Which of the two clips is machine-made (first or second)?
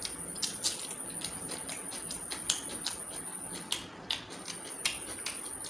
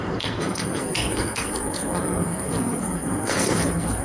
second